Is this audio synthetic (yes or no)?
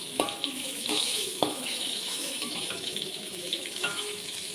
yes